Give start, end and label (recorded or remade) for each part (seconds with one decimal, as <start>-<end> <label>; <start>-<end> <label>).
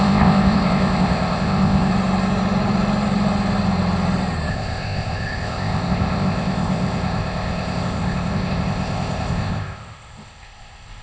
0.0-1.9 remade; 1.9-4.5 recorded; 4.5-11.0 remade